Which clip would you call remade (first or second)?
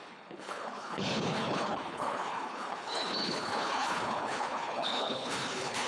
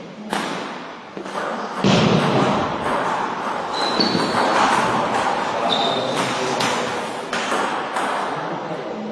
first